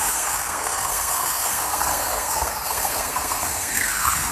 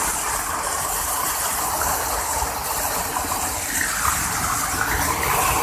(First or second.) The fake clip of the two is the first